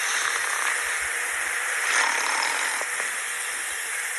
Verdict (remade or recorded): recorded